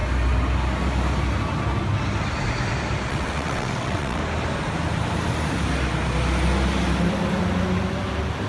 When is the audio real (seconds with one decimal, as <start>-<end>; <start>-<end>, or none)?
0.0-3.1; 4.2-8.5